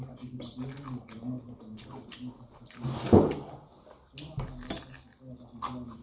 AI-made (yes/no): no